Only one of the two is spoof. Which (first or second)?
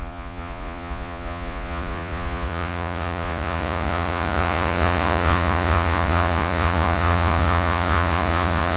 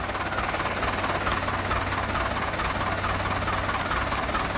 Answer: first